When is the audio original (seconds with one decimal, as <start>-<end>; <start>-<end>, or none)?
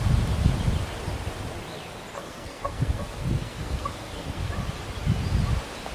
0.0-2.1; 4.5-5.9